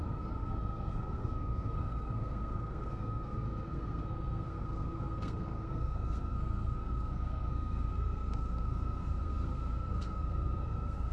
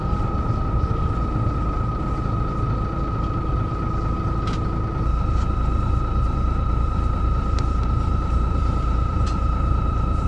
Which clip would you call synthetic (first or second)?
first